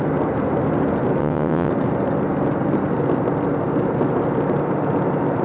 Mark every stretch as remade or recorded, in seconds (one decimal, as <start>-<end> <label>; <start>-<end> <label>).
0.0-1.2 recorded; 1.2-1.7 remade; 1.7-5.4 recorded